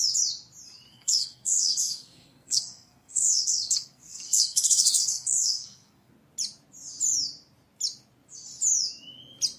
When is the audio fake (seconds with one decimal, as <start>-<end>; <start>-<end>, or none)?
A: 0.9-6.1